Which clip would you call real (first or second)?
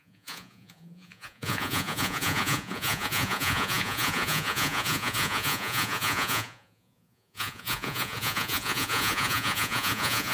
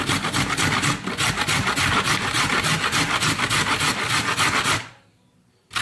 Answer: second